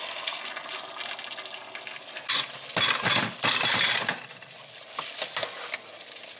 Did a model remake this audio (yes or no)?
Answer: no